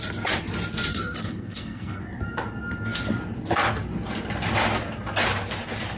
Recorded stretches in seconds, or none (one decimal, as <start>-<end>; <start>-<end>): 0.0-0.9; 2.0-6.0